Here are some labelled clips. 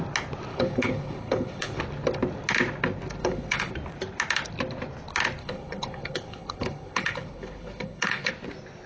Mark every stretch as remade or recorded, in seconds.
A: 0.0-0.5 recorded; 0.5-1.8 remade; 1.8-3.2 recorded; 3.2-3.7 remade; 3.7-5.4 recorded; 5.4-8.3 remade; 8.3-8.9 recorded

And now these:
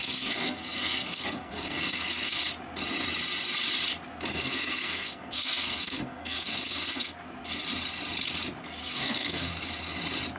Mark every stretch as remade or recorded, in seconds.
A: 0.0-2.5 remade; 2.5-4.3 recorded; 4.3-7.1 remade; 7.1-8.8 recorded; 8.8-9.5 remade; 9.5-10.4 recorded

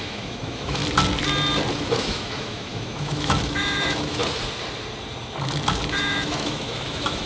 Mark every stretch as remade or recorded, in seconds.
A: 0.0-0.8 remade; 0.8-1.7 recorded; 1.7-4.2 remade; 4.2-5.9 recorded; 5.9-7.3 remade

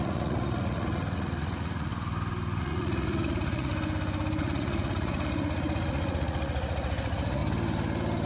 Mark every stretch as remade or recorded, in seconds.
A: 0.0-1.9 remade; 1.9-2.6 recorded; 2.6-3.7 remade; 3.7-4.4 recorded; 4.4-7.4 remade; 7.4-8.3 recorded

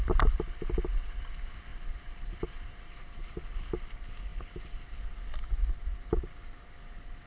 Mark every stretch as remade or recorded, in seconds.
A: 0.0-7.3 recorded

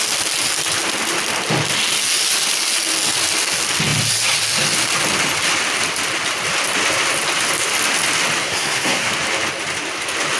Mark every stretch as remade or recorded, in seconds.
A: 0.0-8.4 recorded; 8.4-9.1 remade; 9.1-10.4 recorded